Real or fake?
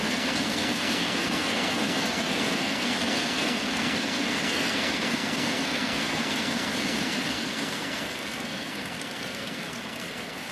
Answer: fake